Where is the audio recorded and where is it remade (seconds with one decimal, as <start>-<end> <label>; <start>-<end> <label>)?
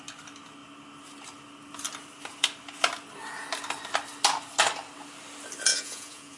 0.0-5.7 recorded; 5.7-6.4 remade